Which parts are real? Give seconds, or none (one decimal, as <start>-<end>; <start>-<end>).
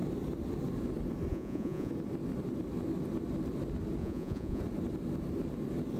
0.0-1.3; 1.9-4.0; 4.6-6.0